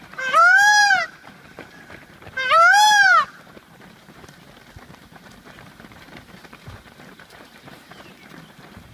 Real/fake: fake